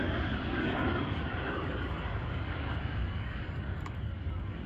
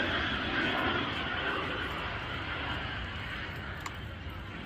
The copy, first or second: first